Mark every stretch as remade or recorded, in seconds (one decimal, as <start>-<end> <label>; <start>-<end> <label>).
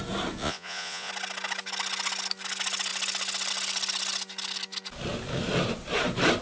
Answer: 0.0-0.4 recorded; 0.4-1.1 remade; 1.1-6.4 recorded